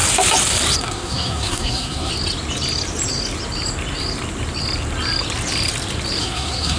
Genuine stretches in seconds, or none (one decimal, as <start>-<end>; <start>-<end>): 0.0-0.8; 2.1-6.2